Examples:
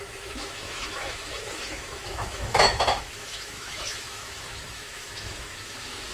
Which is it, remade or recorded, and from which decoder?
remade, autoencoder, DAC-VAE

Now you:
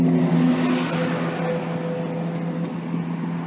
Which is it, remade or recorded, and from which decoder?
recorded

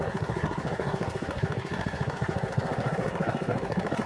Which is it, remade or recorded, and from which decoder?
remade, codec, SNAC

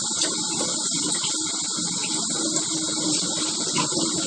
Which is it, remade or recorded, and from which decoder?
recorded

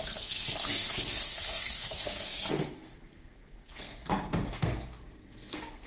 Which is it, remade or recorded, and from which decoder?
remade, codec, SNAC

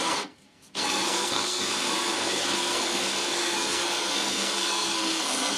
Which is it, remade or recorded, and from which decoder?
remade, codec, SNAC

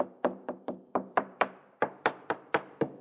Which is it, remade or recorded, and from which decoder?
remade, vocoder, BigVGAN v2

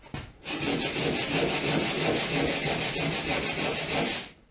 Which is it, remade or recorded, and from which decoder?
recorded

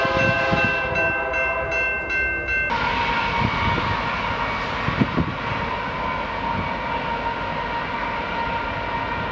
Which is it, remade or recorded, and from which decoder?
recorded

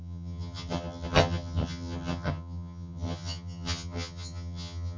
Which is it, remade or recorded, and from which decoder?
remade, vocoder, HiFi-GAN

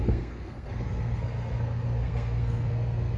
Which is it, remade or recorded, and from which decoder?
remade, codec, SNAC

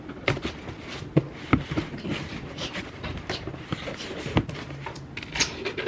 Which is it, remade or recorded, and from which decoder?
recorded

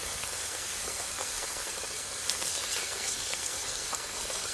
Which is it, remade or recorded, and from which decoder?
remade, codec, SNAC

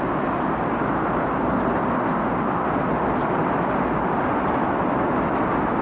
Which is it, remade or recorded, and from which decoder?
recorded